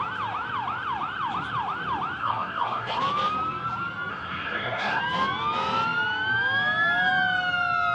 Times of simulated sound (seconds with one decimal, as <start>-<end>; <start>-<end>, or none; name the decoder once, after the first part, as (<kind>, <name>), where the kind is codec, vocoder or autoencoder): 2.2-3.0 (codec, SNAC); 4.1-5.0